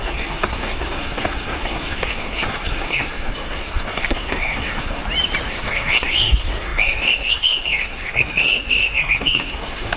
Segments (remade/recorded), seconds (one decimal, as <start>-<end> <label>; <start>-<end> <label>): 0.0-5.0 remade; 5.0-5.5 recorded; 5.5-10.0 remade